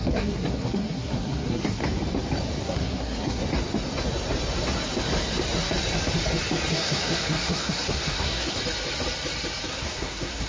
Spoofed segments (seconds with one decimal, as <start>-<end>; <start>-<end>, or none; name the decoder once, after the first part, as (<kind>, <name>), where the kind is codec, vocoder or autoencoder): 0.0-1.8 (codec, SNAC); 2.6-3.4; 6.7-8.6; 9.7-10.5